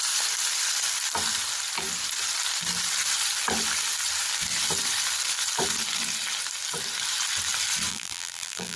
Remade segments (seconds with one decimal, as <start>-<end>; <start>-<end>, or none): 7.9-8.8